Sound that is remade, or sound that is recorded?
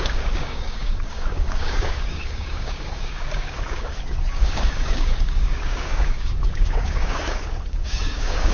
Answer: remade